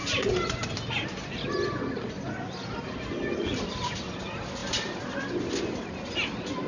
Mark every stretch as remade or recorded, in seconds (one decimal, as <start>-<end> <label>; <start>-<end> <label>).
0.0-6.7 recorded